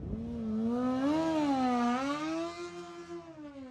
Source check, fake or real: real